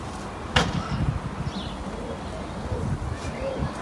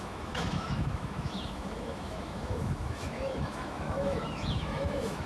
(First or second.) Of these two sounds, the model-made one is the second